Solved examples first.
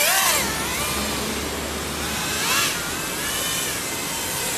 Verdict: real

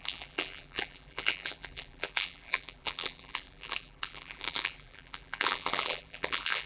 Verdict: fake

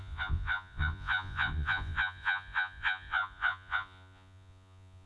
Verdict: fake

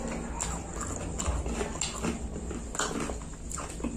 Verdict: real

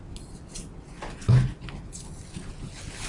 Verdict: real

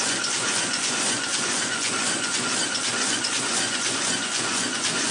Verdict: fake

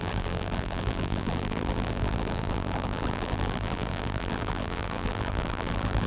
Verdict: fake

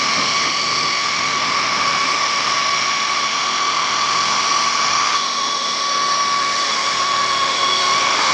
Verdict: fake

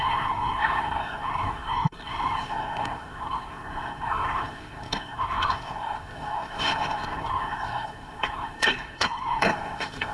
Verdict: fake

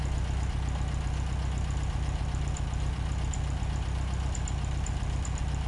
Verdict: real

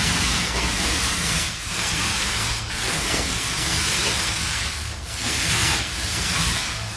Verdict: fake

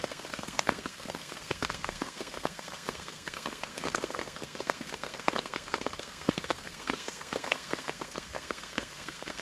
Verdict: fake